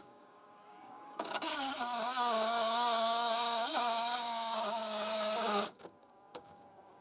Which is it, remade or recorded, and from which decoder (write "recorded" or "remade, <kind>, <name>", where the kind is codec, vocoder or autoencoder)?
remade, codec, DAC